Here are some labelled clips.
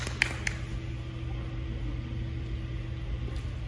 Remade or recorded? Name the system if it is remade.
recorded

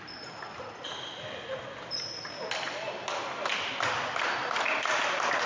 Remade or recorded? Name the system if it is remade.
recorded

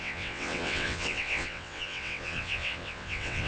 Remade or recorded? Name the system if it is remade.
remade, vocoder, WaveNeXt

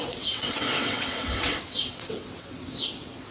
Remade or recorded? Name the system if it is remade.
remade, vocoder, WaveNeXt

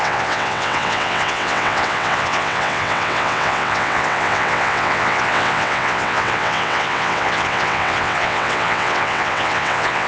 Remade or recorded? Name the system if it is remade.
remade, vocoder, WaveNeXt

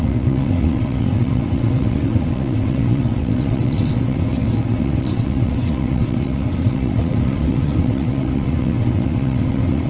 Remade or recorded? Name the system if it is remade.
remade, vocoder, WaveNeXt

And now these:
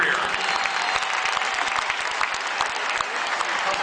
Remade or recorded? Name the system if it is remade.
recorded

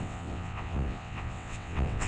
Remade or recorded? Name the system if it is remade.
remade, vocoder, WaveNeXt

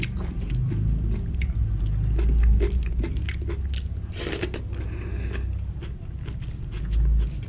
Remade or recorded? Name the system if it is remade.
recorded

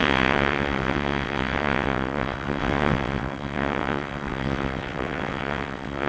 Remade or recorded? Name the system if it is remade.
remade, vocoder, WaveNeXt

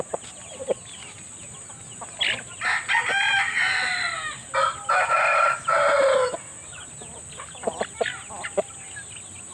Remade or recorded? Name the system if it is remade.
recorded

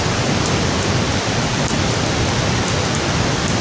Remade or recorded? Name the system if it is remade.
recorded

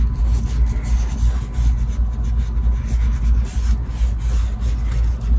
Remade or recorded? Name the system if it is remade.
recorded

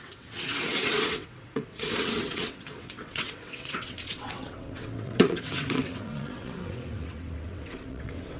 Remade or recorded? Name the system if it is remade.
remade, vocoder, WaveNeXt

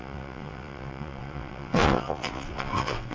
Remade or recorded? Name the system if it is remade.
remade, vocoder, WaveNeXt